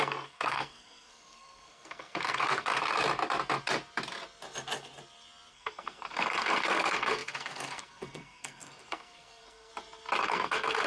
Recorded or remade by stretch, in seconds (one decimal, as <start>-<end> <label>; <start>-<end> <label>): 0.0-2.8 remade; 2.8-5.5 recorded; 5.5-9.7 remade; 9.7-10.2 recorded; 10.2-10.9 remade